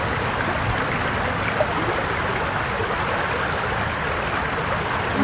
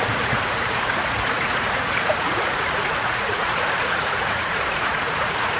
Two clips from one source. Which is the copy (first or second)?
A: second